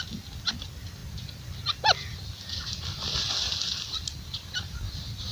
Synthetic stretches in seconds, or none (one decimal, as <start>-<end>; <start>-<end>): none